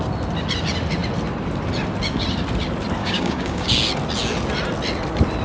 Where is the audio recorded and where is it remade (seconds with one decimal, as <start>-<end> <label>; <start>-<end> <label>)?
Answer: 0.0-3.0 recorded; 3.0-3.7 remade; 3.7-5.4 recorded